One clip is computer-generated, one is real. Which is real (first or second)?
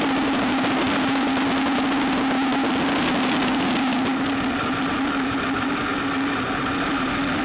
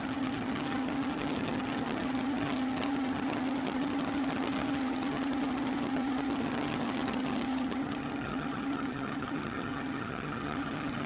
first